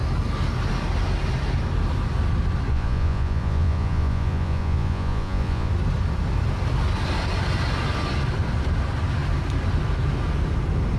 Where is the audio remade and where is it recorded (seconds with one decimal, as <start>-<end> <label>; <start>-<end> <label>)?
0.0-2.7 recorded; 2.7-5.7 remade; 5.7-11.0 recorded